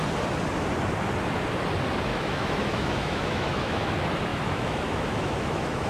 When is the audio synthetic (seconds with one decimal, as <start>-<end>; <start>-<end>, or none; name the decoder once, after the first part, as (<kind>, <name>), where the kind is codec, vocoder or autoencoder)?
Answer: 2.1-3.9 (autoencoder, DAC-VAE); 4.3-5.9